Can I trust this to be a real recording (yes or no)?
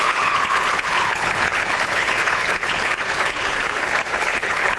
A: no